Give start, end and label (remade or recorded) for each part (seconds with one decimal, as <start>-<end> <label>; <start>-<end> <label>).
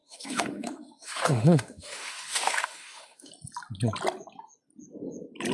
0.0-3.3 remade; 3.3-5.5 recorded